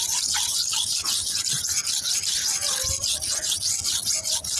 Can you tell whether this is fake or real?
real